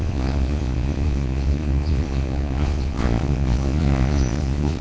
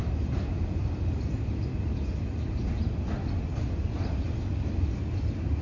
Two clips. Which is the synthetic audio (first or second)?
first